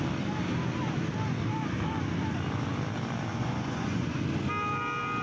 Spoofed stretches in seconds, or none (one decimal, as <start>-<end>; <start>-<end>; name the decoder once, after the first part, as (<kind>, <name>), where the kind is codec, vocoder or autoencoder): 3.3-4.2 (vocoder, Vocos)